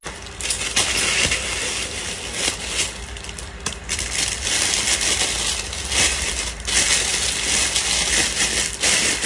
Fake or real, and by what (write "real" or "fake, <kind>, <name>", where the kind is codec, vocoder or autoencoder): real